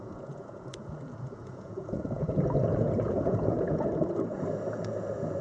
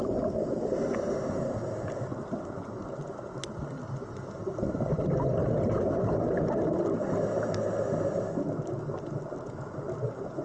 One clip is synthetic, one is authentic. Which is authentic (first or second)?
second